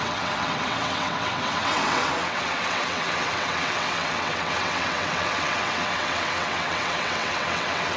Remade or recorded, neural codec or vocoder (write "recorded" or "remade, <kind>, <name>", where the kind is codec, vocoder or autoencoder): remade, vocoder, WaveNeXt